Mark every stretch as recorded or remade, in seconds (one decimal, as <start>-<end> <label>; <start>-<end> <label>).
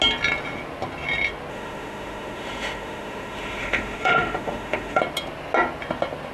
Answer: 0.0-1.5 recorded; 1.5-5.0 remade; 5.0-6.3 recorded